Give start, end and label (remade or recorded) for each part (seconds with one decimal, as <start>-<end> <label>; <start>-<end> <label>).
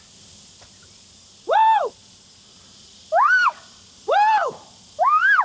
0.0-5.4 recorded